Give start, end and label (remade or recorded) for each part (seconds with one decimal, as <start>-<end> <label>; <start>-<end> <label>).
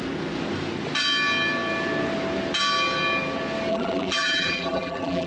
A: 0.0-3.7 recorded; 3.7-5.3 remade